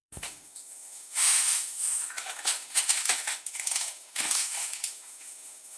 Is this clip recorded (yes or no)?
no